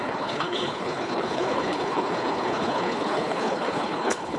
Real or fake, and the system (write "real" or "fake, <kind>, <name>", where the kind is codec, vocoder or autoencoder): fake, codec, HILCodec